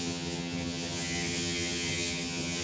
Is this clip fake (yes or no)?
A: yes